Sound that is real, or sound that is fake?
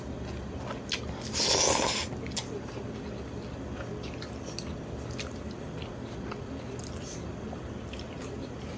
real